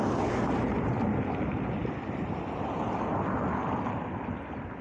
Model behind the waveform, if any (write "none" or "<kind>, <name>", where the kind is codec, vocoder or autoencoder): none